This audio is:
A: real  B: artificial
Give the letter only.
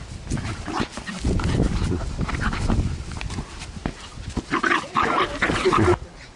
A